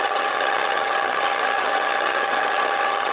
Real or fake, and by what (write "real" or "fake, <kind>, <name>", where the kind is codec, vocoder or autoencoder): fake, vocoder, HiFi-GAN